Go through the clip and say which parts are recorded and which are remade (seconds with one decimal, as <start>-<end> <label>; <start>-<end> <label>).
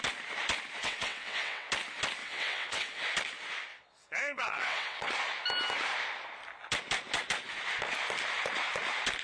0.0-0.8 recorded; 0.8-1.7 remade; 1.7-2.2 recorded; 2.2-3.0 remade; 3.0-3.7 recorded; 3.7-5.1 remade; 5.1-9.2 recorded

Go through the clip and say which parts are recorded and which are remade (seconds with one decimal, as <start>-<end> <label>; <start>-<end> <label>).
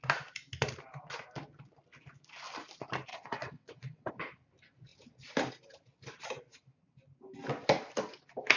0.0-3.1 recorded; 3.1-4.1 remade; 4.1-8.6 recorded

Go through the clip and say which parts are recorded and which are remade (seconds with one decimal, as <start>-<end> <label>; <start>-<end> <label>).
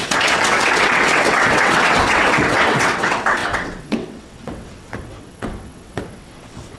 0.0-6.8 remade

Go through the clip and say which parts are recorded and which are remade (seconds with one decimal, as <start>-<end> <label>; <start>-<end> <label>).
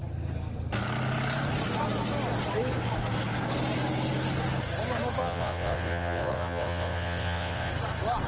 0.0-5.2 recorded; 5.2-7.7 remade; 7.7-8.3 recorded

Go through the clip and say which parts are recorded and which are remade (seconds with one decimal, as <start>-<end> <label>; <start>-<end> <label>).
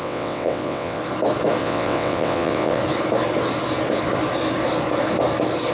0.0-1.0 remade; 1.0-1.6 recorded; 1.6-2.8 remade; 2.8-5.7 recorded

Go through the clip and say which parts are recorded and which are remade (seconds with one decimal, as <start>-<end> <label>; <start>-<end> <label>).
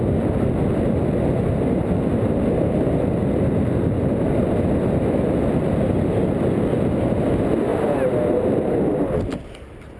0.0-10.0 recorded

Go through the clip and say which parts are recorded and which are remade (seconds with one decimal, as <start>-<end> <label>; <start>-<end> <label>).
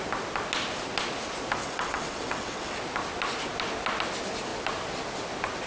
0.0-1.6 recorded; 1.6-2.8 remade; 2.8-5.7 recorded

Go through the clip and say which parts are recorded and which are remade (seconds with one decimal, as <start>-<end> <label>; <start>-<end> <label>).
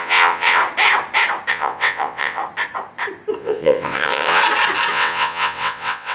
0.0-0.6 remade; 0.6-1.5 recorded; 1.5-2.4 remade; 2.4-3.4 recorded; 3.4-4.4 remade; 4.4-4.9 recorded; 4.9-6.1 remade